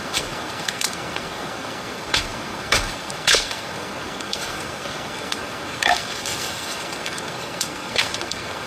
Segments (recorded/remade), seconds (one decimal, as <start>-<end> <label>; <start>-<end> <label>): 0.0-8.7 remade